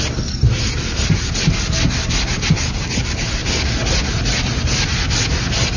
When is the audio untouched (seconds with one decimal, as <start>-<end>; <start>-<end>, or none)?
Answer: 0.0-5.8